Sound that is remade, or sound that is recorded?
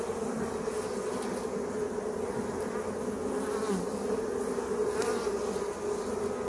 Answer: recorded